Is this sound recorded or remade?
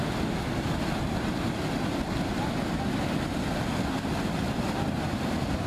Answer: recorded